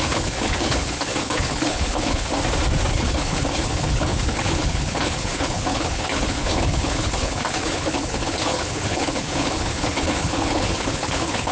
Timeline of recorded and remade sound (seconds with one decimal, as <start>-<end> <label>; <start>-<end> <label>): 0.0-2.3 remade; 2.3-2.9 recorded; 2.9-11.5 remade